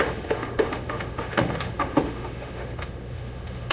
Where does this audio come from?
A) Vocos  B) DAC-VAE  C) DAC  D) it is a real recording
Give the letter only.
B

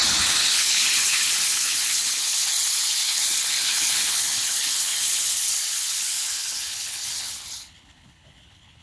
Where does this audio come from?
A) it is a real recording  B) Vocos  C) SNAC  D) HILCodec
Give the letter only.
D